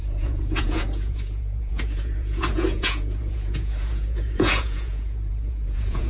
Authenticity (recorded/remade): remade